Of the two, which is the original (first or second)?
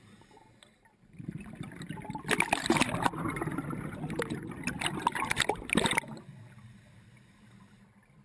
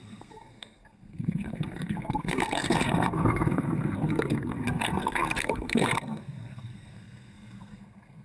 first